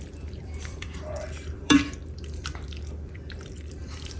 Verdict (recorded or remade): remade